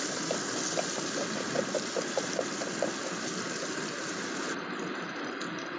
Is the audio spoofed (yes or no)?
no